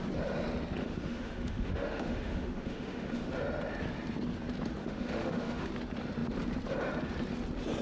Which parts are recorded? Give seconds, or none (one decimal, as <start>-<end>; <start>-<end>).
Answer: 0.0-0.8; 3.3-4.8; 5.7-7.8